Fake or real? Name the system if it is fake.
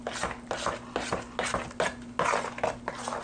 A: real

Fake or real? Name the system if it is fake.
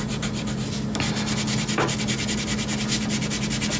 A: real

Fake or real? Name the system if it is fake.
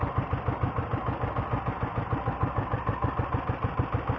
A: real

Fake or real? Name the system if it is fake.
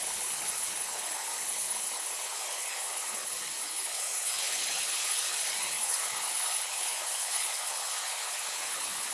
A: fake, codec, HILCodec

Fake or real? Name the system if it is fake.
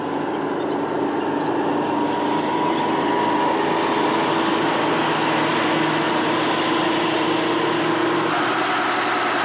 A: real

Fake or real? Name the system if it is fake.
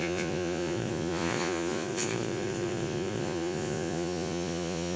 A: fake, vocoder, Vocos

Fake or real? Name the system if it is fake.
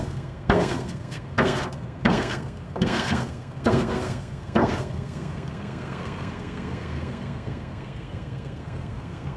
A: fake, codec, SNAC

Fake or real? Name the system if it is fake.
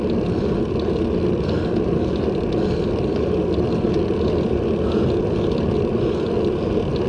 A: real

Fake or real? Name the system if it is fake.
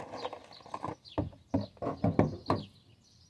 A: real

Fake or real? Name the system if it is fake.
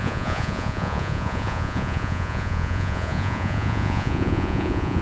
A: fake, vocoder, Vocos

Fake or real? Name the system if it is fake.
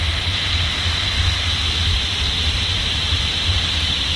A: real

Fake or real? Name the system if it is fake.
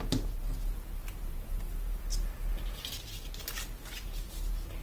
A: real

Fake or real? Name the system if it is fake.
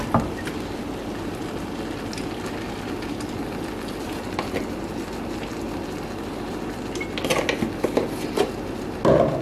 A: real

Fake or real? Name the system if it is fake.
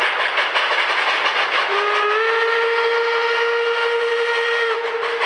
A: real